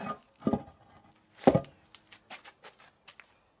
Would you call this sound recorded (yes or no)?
yes